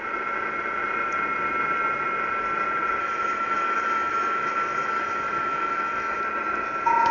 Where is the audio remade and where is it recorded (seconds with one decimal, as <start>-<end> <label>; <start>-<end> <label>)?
0.0-3.0 recorded; 3.0-6.2 remade; 6.2-7.1 recorded